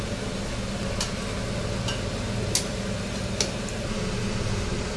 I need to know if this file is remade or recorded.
recorded